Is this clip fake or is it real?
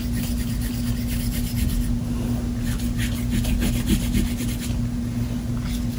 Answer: real